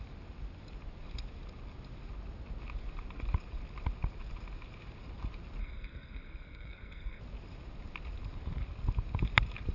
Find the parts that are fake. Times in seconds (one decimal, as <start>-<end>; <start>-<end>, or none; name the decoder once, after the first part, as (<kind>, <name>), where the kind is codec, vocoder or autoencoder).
5.6-7.2 (codec, SNAC)